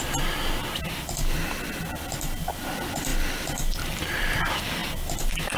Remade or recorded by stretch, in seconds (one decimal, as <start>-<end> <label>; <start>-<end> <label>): 0.0-5.6 recorded